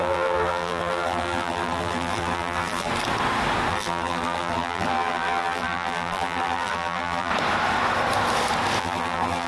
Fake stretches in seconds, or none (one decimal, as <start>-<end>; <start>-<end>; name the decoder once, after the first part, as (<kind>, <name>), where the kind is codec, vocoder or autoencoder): 0.0-2.9 (vocoder, BigVGAN v2); 3.7-7.3; 8.8-9.5